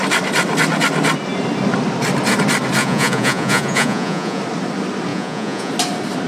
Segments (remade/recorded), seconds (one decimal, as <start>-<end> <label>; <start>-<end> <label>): 0.0-2.8 recorded; 2.8-4.4 remade; 4.4-5.1 recorded; 5.1-5.7 remade; 5.7-6.3 recorded